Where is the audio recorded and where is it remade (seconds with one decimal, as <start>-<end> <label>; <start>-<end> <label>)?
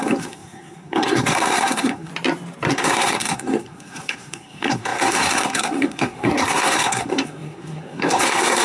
0.0-2.1 remade; 2.1-2.7 recorded; 2.7-8.6 remade